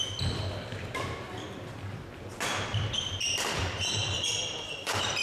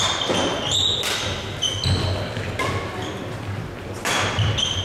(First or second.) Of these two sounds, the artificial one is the first